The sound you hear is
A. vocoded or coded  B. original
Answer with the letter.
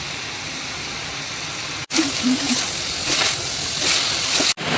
B